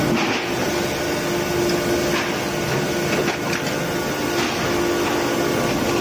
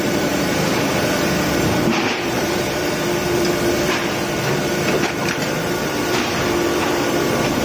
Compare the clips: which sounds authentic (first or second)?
first